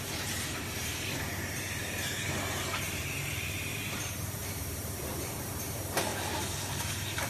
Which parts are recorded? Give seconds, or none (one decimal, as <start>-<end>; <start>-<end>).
6.1-6.8